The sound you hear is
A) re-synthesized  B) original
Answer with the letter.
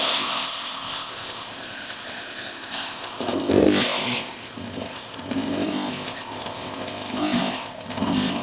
A